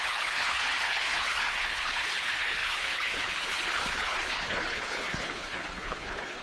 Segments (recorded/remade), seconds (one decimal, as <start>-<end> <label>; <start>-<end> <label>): 0.0-6.4 remade